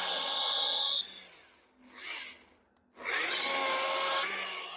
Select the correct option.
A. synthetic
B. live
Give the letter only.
B